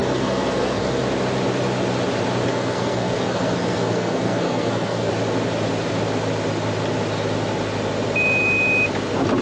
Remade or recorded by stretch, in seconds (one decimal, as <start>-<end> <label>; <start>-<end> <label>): 0.0-1.0 remade; 1.0-2.5 recorded; 2.5-5.1 remade; 5.1-9.4 recorded